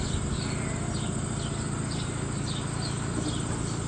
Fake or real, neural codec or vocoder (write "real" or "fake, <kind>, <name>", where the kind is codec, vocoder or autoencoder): real